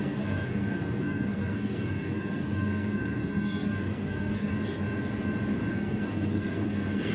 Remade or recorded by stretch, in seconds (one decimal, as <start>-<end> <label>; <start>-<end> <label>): 0.0-4.5 remade; 4.5-5.7 recorded; 5.7-7.1 remade